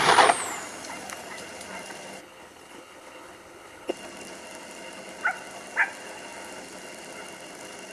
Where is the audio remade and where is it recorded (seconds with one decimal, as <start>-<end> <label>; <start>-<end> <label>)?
0.0-2.2 recorded; 2.2-3.9 remade; 3.9-7.9 recorded